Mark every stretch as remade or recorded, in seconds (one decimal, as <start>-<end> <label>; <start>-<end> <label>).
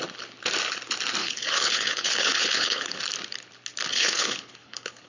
0.0-1.2 recorded; 1.2-3.0 remade; 3.0-3.9 recorded; 3.9-5.1 remade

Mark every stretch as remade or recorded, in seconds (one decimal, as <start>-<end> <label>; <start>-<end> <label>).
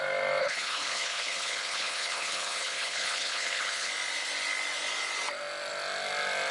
0.0-0.4 recorded; 0.4-3.9 remade; 3.9-6.5 recorded